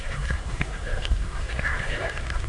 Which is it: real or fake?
fake